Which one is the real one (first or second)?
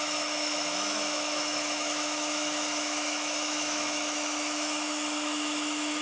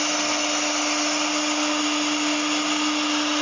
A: second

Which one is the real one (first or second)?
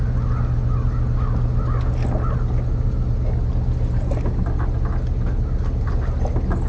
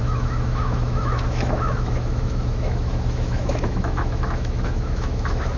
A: first